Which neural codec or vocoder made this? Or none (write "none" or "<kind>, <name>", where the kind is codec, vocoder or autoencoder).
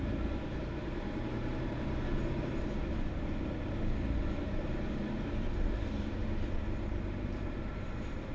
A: vocoder, BigVGAN v2